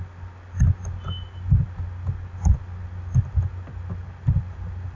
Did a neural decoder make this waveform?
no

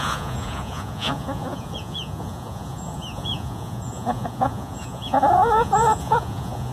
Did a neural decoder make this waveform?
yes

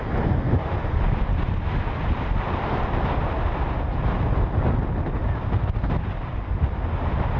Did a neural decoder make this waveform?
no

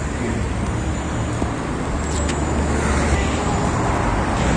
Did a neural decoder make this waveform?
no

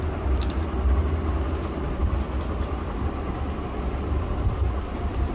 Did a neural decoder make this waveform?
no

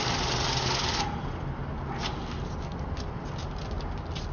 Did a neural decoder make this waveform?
no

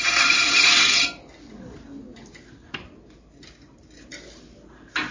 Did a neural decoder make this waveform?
no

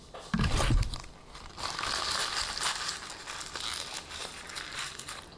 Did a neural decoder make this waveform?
no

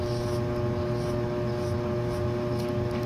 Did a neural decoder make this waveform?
no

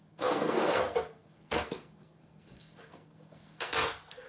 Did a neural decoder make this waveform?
yes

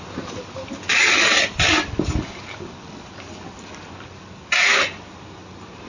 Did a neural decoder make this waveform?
no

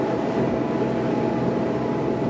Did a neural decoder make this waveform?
no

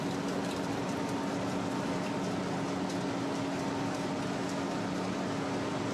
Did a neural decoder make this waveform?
no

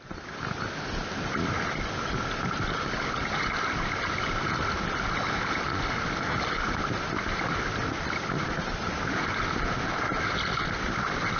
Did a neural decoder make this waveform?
no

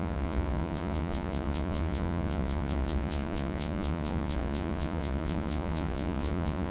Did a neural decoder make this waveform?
yes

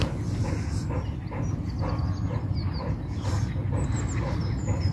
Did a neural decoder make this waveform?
no